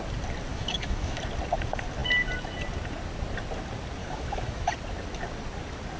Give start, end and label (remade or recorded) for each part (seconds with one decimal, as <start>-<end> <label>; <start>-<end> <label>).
0.0-0.5 recorded; 0.5-1.2 remade; 1.2-4.0 recorded; 4.0-4.7 remade; 4.7-6.0 recorded